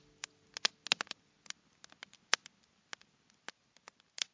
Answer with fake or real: real